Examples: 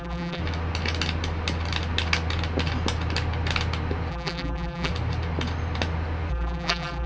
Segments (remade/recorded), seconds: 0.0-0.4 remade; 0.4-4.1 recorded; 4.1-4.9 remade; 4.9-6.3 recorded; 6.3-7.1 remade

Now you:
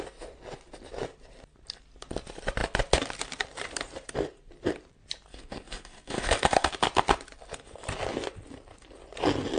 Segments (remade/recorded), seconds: 0.0-5.3 recorded; 5.3-6.7 remade; 6.7-9.6 recorded